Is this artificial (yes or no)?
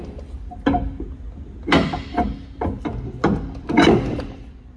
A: no